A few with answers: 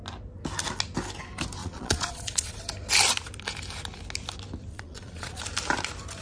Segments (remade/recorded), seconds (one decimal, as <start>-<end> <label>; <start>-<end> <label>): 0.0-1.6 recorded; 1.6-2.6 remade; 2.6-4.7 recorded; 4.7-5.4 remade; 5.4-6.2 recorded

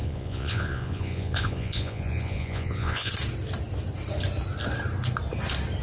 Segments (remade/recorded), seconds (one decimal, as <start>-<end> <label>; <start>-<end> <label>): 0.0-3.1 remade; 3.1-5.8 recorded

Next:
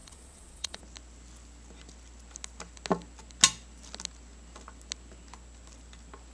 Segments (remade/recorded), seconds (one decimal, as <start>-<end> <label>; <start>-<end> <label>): 0.0-0.8 remade; 0.8-6.3 recorded

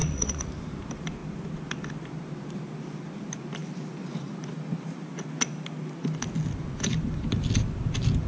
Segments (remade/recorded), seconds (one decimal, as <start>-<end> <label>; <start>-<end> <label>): 0.0-0.5 remade; 0.5-8.3 recorded

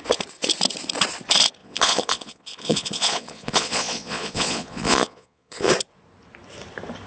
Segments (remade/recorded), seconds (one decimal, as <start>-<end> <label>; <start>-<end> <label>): 0.0-1.6 recorded; 1.6-5.7 remade; 5.7-7.1 recorded

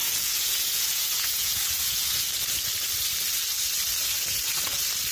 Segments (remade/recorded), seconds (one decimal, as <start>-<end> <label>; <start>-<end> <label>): 0.0-2.2 remade; 2.2-5.1 recorded

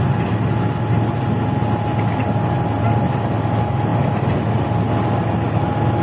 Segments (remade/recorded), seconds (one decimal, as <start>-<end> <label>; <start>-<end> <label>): 0.0-6.0 recorded

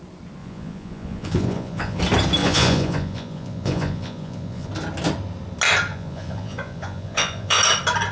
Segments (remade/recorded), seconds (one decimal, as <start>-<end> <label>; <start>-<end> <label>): 0.0-0.4 recorded; 0.4-2.0 remade; 2.0-2.4 recorded; 2.4-4.7 remade; 4.7-5.9 recorded; 5.9-7.6 remade; 7.6-8.1 recorded